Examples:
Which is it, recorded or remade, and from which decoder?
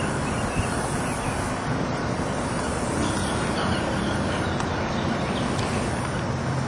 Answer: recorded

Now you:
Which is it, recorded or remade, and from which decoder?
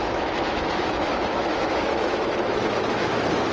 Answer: remade, autoencoder, DAC-VAE